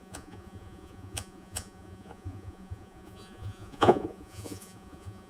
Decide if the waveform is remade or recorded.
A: remade